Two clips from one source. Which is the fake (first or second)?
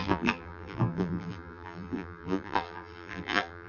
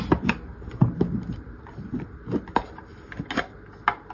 first